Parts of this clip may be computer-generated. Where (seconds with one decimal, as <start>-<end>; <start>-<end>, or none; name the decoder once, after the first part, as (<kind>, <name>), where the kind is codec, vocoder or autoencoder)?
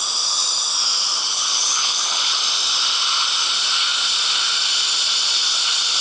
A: 1.2-2.4 (codec, HILCodec)